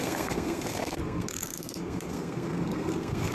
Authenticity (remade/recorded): remade